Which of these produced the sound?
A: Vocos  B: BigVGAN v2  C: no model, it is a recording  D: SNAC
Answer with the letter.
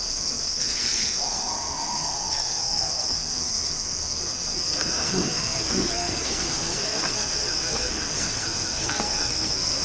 D